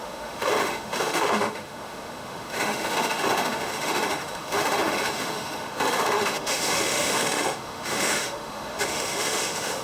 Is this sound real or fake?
fake